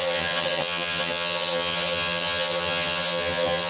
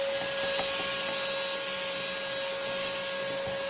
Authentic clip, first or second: second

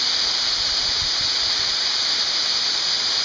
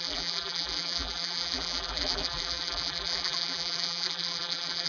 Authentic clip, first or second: first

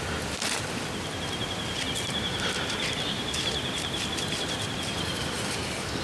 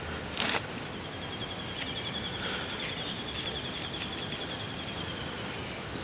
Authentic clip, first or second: second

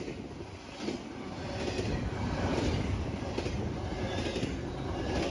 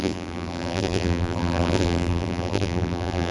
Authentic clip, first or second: first